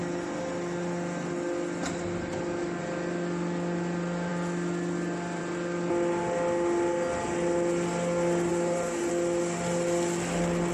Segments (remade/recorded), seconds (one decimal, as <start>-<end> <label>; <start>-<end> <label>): 0.0-8.5 recorded; 8.5-9.1 remade; 9.1-10.7 recorded